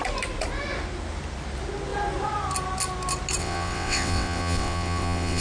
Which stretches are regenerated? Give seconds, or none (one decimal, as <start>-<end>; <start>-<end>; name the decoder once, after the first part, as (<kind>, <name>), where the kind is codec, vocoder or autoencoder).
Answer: 3.4-5.4 (vocoder, WaveNeXt)